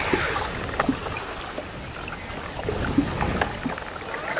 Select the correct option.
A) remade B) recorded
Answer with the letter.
B